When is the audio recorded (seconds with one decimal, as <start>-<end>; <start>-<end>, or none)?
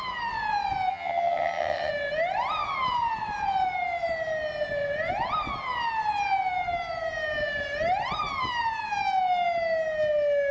0.0-0.9; 1.9-10.5